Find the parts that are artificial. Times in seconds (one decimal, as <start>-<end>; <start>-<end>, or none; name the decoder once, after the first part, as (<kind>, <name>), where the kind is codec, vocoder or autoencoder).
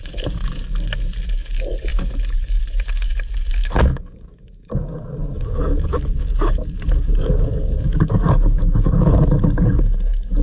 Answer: 0.0-0.6 (codec, DAC); 1.3-10.4